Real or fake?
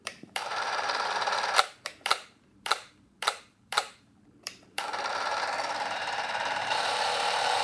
fake